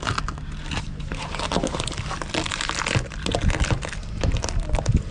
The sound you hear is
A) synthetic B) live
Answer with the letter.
B